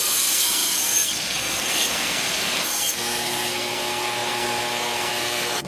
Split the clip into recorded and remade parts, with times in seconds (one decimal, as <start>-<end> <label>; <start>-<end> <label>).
0.0-5.7 remade